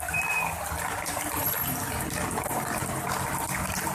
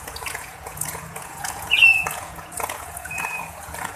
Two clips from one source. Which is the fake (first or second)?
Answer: second